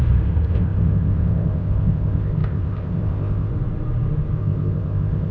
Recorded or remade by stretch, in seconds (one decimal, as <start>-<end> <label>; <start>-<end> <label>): 0.0-3.5 remade; 3.5-4.4 recorded; 4.4-5.3 remade